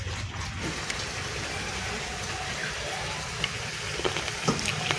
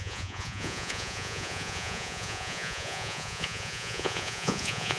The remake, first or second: second